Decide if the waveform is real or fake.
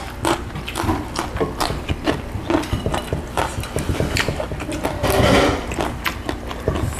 real